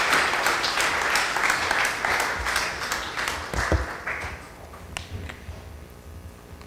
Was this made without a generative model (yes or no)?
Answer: yes